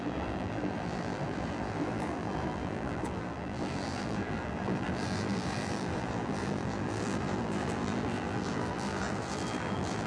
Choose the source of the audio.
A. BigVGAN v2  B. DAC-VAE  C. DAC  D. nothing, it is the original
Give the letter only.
A